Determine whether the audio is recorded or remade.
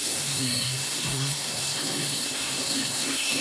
remade